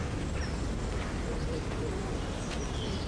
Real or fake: fake